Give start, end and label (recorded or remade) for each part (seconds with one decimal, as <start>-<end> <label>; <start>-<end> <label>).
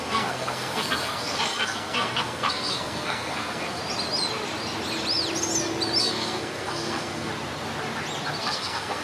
0.0-3.8 remade; 3.8-6.0 recorded; 6.0-7.3 remade; 7.3-8.4 recorded; 8.4-9.0 remade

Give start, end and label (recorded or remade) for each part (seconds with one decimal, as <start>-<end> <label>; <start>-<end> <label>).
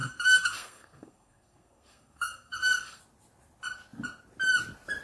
0.0-3.0 remade; 3.0-5.0 recorded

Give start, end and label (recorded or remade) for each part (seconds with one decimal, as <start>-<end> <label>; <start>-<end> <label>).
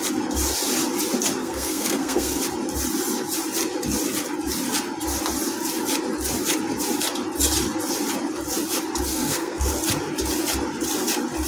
0.0-1.4 recorded; 1.4-2.4 remade; 2.4-9.1 recorded; 9.1-9.7 remade; 9.7-11.5 recorded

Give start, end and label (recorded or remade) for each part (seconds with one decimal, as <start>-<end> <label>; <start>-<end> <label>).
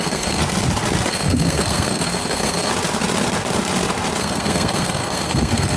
0.0-0.4 remade; 0.4-1.1 recorded; 1.1-2.7 remade; 2.7-4.2 recorded; 4.2-5.8 remade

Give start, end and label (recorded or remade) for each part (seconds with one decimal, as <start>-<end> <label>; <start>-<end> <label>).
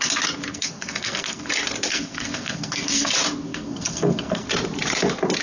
0.0-0.5 recorded; 0.5-1.5 remade; 1.5-1.9 recorded; 1.9-3.1 remade; 3.1-3.5 recorded; 3.5-4.5 remade; 4.5-5.4 recorded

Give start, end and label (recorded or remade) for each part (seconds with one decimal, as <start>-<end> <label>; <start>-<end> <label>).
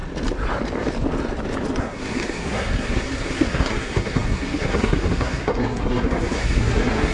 0.0-1.8 recorded; 1.8-7.1 remade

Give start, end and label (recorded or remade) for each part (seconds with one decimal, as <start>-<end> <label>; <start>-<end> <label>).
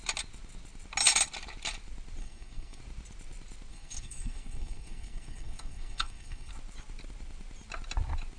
0.0-2.2 recorded; 2.2-2.8 remade; 2.8-3.7 recorded; 3.7-6.5 remade; 6.5-8.4 recorded